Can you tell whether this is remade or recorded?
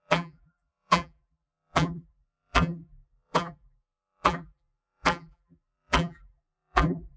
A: remade